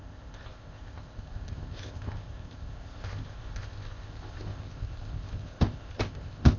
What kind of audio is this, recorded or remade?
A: remade